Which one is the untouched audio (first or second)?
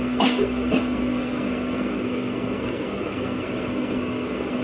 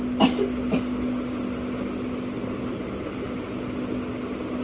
second